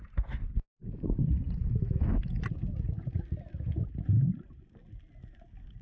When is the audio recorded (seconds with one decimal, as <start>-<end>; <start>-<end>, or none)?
0.0-0.7; 1.2-1.6; 2.4-5.8

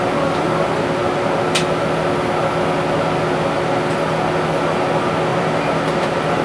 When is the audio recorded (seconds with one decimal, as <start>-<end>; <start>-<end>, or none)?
0.0-5.3

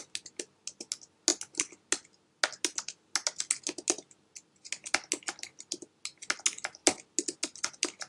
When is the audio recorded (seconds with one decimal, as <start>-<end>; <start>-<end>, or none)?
0.0-8.1